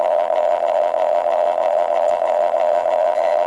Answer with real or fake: fake